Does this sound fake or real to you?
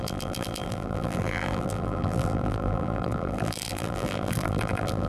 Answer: fake